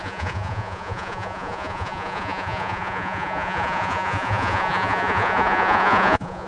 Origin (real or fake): fake